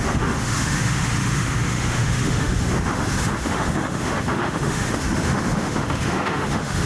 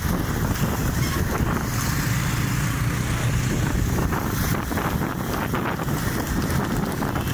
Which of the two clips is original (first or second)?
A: second